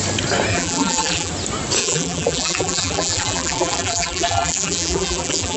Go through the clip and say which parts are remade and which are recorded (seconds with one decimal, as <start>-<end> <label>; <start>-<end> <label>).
0.0-0.5 recorded; 0.5-1.3 remade; 1.3-1.8 recorded; 1.8-5.6 remade